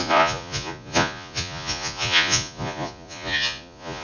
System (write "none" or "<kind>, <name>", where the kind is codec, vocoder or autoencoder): vocoder, Vocos